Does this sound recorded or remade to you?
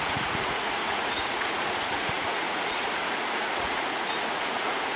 remade